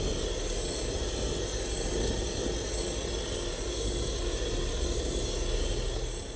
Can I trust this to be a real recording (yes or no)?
yes